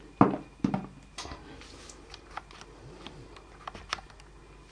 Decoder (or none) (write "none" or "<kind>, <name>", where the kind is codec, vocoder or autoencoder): none